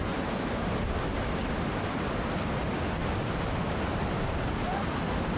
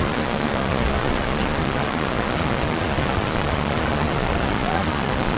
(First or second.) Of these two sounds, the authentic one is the first